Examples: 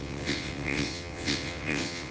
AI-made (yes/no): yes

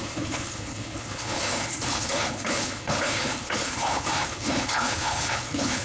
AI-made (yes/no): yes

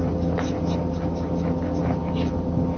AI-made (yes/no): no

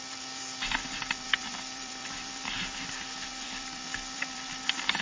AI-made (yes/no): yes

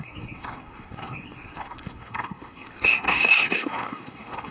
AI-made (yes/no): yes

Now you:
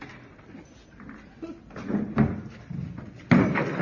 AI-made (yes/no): no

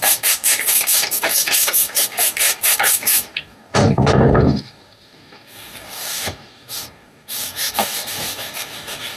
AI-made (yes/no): yes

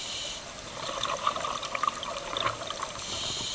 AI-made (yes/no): no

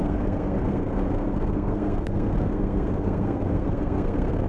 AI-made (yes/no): yes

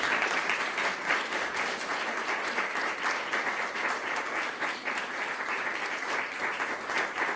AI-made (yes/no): no